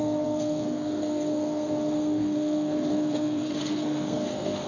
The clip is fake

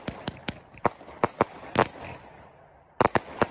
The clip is real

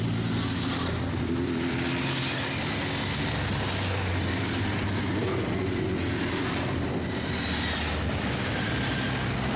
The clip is real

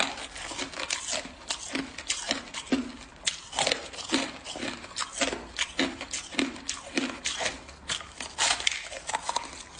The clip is real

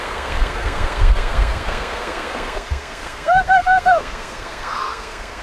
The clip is fake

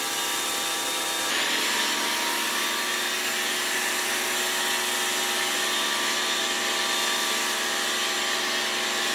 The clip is real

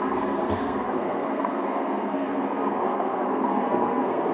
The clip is fake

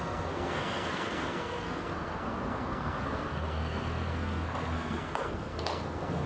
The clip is fake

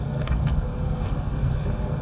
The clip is fake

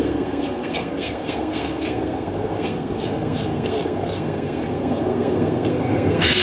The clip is fake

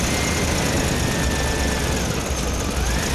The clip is real